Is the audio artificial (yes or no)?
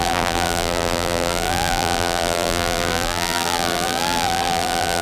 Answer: yes